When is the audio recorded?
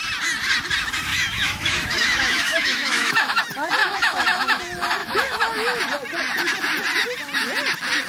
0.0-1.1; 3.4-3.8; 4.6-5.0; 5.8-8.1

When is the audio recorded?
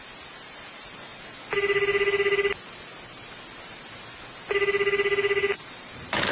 0.0-6.3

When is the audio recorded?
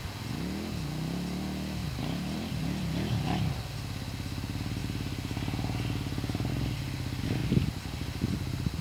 0.0-1.8; 2.6-8.8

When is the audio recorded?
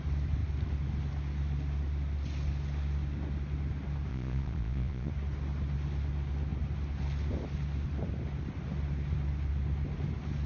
0.0-4.1; 5.1-10.5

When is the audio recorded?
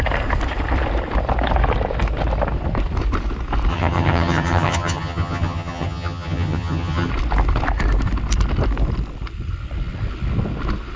0.0-3.7; 7.1-11.0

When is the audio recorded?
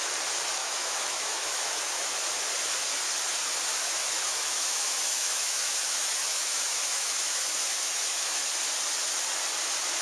0.0-0.6; 2.1-3.7; 8.4-10.0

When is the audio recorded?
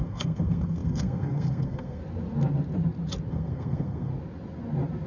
2.0-3.3; 4.1-5.1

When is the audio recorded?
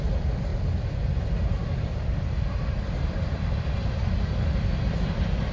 0.0-0.5; 3.8-5.5